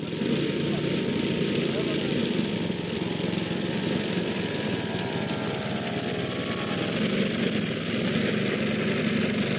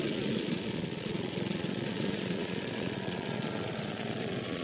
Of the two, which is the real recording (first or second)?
first